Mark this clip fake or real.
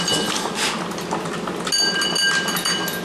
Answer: real